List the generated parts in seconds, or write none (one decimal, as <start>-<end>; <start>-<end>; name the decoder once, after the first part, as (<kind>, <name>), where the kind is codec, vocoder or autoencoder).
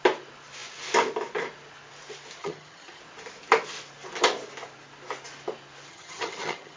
2.4-3.0 (vocoder, HiFi-GAN); 5.9-6.8